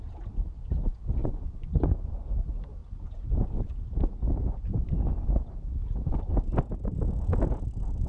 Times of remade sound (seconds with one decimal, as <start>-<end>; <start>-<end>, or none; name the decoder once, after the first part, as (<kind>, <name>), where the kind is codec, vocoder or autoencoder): 1.2-2.1 (vocoder, Vocos)